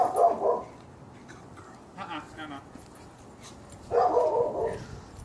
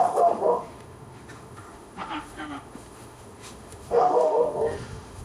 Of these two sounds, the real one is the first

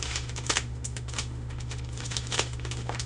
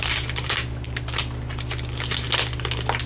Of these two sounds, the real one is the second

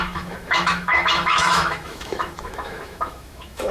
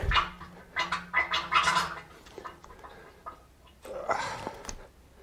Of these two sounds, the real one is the second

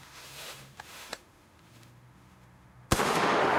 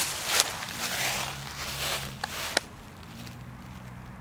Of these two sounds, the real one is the second